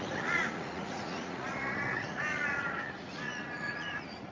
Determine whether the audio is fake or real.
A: fake